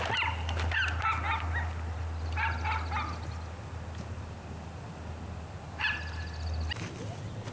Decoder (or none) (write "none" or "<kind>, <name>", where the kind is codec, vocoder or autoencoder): none